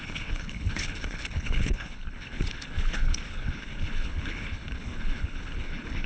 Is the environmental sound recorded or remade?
remade